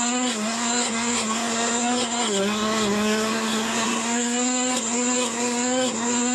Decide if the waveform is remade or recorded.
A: remade